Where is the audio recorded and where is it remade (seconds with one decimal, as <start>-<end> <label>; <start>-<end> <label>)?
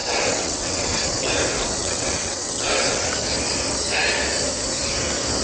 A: 0.0-1.3 remade; 1.3-1.8 recorded; 1.8-3.1 remade; 3.1-5.4 recorded